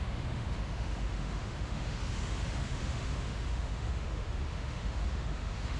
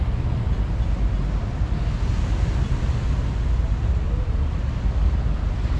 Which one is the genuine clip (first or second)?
second